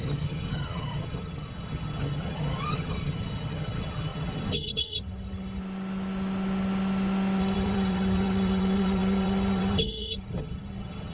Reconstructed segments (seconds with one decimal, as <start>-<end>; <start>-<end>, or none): 0.0-5.6; 7.4-11.1